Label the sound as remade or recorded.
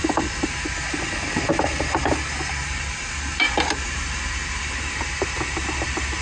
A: recorded